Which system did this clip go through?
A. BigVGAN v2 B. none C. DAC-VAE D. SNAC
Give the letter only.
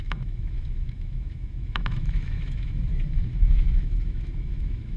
C